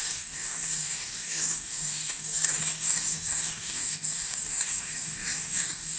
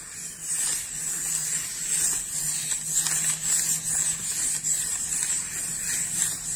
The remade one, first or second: first